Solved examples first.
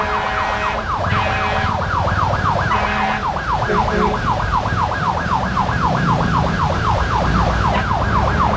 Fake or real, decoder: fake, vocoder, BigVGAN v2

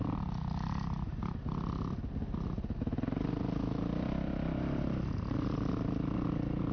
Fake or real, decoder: real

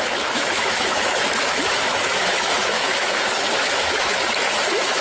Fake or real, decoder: fake, autoencoder, DAC-VAE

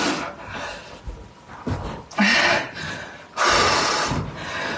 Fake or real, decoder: real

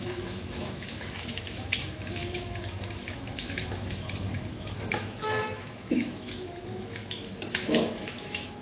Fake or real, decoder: fake, autoencoder, DAC-VAE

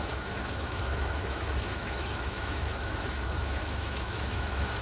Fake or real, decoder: fake, autoencoder, DAC-VAE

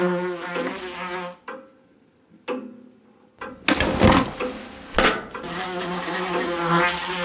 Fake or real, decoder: real